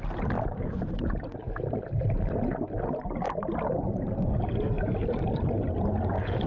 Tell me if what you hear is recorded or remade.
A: recorded